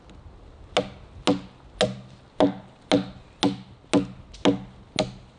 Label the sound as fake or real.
real